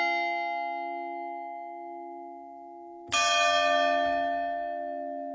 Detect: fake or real real